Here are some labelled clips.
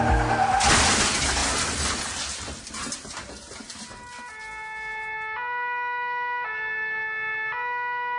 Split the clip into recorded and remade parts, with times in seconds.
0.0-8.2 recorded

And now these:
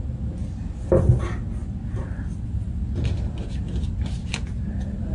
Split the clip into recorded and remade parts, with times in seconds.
0.0-5.1 recorded